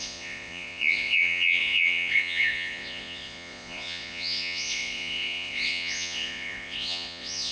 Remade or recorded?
remade